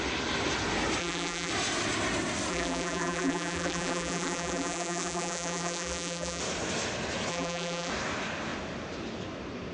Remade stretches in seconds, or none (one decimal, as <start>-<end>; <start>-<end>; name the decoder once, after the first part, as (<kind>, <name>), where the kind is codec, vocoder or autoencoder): 1.0-1.5 (vocoder, BigVGAN v2); 2.5-6.4; 7.3-7.9